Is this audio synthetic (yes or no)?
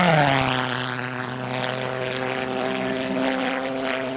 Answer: no